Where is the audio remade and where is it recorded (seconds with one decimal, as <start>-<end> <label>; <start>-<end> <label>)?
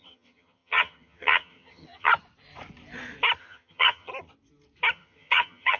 0.0-2.1 remade; 2.1-3.4 recorded; 3.4-4.1 remade; 4.1-4.9 recorded; 4.9-5.8 remade